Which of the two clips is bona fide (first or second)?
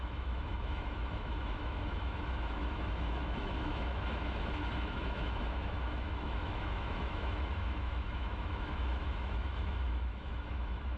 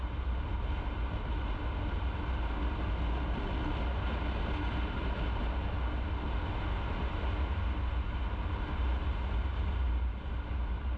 second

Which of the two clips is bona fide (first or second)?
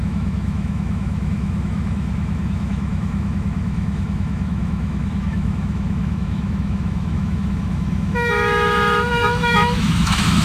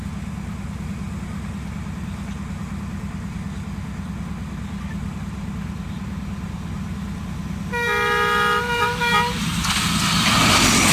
second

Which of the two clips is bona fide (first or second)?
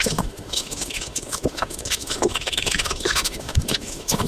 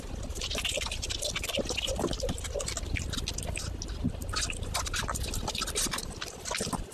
second